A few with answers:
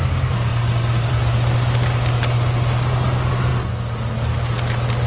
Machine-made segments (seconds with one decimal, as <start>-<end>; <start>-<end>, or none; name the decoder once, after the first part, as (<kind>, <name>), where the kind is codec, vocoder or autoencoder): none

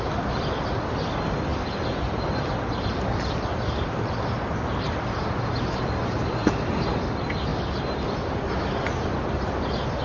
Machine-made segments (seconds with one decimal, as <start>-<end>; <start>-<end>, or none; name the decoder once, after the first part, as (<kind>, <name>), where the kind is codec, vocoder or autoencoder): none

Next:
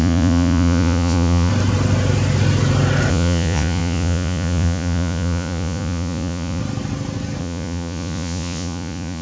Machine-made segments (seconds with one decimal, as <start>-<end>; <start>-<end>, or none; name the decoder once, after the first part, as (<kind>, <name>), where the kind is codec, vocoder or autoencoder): 0.0-1.5 (vocoder, Vocos); 3.1-6.6; 7.4-9.2

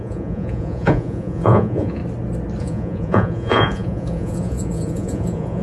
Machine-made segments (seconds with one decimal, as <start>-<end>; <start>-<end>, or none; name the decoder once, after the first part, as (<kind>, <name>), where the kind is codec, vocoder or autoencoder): 0.0-2.0 (vocoder, Vocos); 2.6-5.6

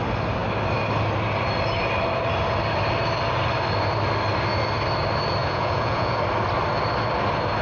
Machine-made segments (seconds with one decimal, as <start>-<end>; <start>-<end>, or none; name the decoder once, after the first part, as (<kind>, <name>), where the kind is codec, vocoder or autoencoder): 5.4-6.2 (vocoder, Vocos)

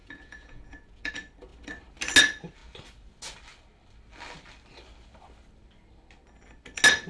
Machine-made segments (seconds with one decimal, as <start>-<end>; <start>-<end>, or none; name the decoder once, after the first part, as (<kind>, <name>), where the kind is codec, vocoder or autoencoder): 0.0-1.1 (vocoder, Vocos)

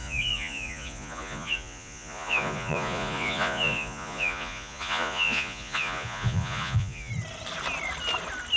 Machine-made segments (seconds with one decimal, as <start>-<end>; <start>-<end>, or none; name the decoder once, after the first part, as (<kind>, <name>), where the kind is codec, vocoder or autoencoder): 0.0-7.1 (vocoder, Vocos)

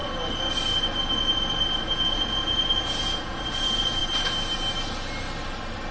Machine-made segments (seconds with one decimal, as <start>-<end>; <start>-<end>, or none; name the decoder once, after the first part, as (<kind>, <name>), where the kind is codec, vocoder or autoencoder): 1.8-4.0 (vocoder, Vocos)